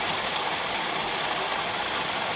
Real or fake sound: real